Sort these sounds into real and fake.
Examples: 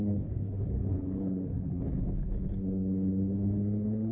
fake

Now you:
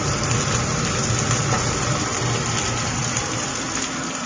real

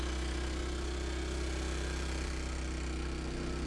real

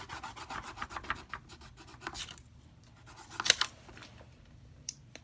real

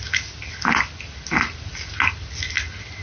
real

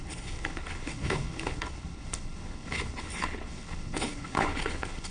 fake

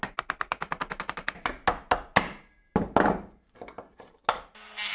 real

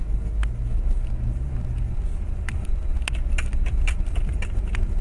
real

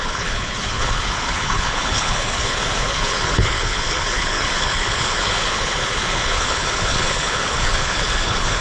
fake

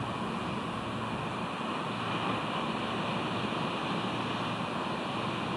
real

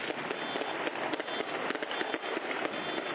real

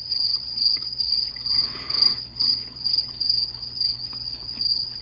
fake